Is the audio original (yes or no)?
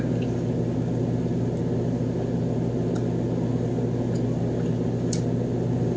yes